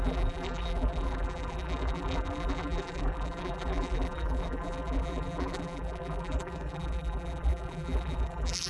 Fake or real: fake